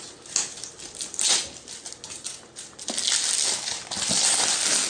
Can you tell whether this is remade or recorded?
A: recorded